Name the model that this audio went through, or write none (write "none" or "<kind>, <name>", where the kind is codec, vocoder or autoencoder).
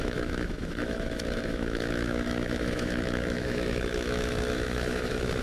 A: autoencoder, DAC-VAE